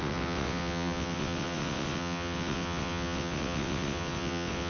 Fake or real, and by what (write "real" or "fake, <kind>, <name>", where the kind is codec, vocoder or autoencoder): fake, vocoder, WaveNeXt